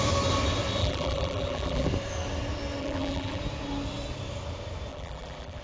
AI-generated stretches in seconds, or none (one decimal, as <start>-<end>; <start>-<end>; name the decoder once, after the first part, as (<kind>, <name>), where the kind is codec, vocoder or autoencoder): 0.8-1.9 (vocoder, BigVGAN v2); 2.8-3.4; 4.9-5.6